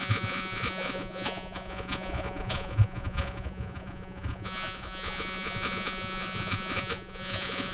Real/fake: fake